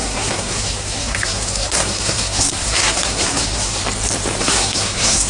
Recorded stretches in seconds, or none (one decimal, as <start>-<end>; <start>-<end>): 3.8-4.4